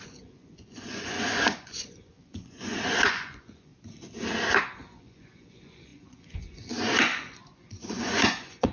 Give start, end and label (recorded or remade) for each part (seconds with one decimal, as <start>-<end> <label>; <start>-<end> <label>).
0.0-3.7 remade; 3.7-4.6 recorded; 4.6-8.7 remade